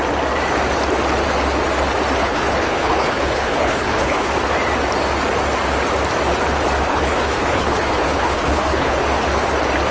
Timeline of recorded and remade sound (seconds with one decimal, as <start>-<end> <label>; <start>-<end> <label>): 0.0-2.2 recorded; 2.2-4.3 remade; 4.3-6.9 recorded; 6.9-9.0 remade; 9.0-9.9 recorded